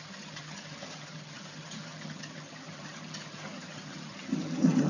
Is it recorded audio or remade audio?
remade